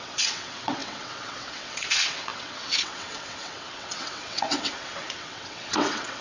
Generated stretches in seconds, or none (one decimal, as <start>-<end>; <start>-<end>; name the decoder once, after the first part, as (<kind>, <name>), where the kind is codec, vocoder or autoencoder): 0.0-6.2 (vocoder, WaveNeXt)

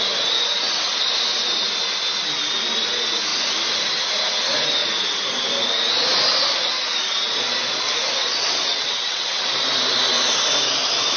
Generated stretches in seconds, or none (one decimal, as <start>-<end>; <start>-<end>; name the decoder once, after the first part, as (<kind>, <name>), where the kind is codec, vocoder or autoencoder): 8.2-9.4 (vocoder, WaveNeXt)

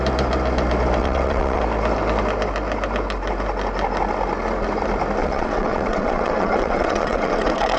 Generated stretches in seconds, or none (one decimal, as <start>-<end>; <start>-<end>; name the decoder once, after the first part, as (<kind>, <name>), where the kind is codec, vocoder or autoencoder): 1.0-1.6 (vocoder, WaveNeXt); 5.2-7.8

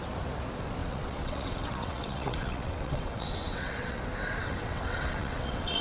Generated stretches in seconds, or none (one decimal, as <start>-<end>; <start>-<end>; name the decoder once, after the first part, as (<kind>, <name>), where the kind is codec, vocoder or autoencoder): 0.8-4.0 (vocoder, WaveNeXt); 4.4-5.8